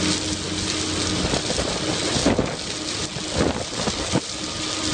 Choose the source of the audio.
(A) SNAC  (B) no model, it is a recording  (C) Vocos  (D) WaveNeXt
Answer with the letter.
B